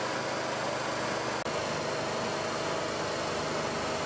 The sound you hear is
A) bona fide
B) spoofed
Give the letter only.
A